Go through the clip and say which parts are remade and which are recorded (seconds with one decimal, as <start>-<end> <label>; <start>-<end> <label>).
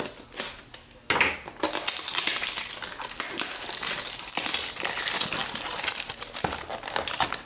0.0-7.5 recorded